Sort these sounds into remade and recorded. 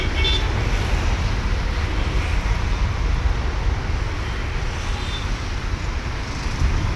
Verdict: recorded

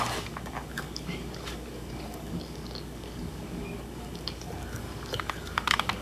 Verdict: remade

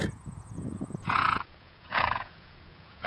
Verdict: remade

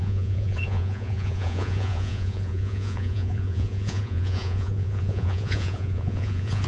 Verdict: remade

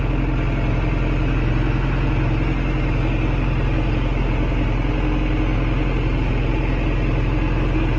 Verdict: recorded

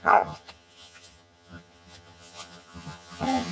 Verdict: remade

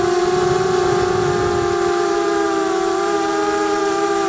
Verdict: remade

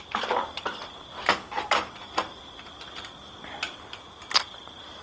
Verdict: recorded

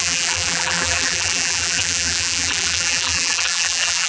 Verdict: remade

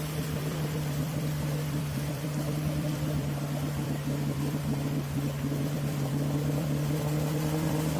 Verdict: remade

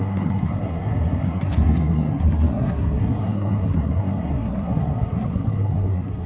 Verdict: remade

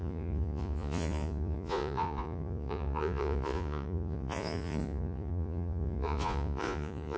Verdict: remade